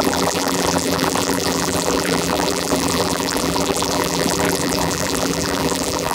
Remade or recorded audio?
remade